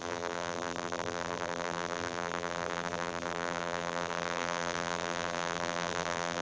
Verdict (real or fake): fake